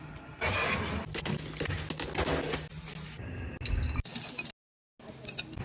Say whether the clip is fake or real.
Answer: real